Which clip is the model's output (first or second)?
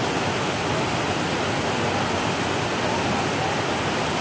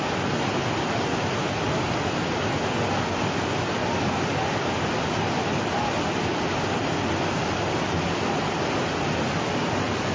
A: first